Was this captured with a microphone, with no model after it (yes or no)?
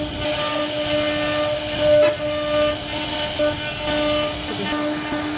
yes